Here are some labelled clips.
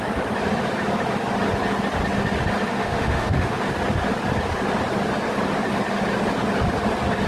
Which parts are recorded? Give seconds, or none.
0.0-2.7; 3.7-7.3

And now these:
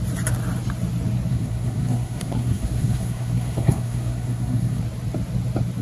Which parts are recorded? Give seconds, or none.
0.0-1.3; 4.8-5.8

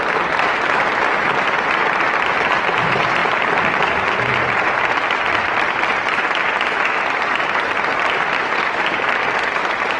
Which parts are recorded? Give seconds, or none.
0.0-10.0

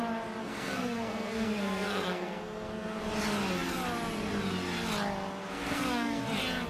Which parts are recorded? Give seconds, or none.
0.0-0.4; 3.0-5.4; 6.2-6.7

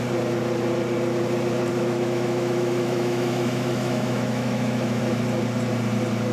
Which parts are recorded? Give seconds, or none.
0.0-1.7; 5.0-6.3

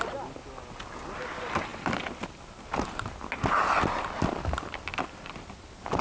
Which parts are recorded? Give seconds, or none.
0.0-6.0